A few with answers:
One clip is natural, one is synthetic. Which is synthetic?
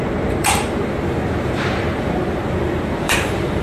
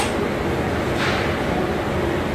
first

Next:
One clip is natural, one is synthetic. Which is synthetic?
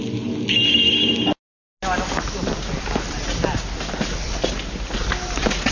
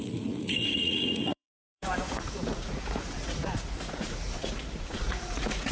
second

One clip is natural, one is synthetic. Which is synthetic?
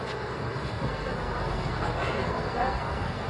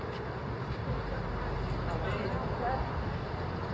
first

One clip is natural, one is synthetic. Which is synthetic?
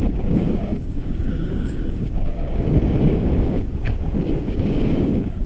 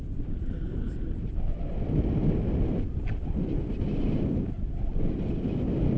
first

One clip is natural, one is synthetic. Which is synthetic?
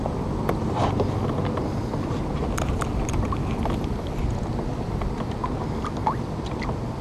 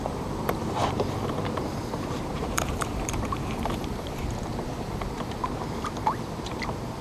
second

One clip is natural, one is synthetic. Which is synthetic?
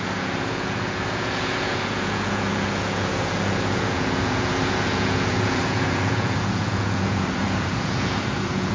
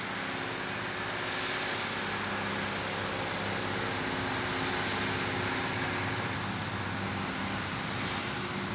first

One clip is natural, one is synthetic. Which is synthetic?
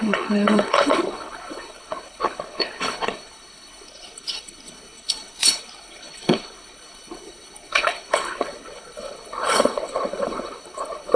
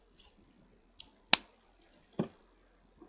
first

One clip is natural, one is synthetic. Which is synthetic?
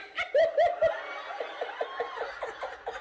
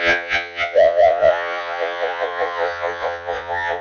second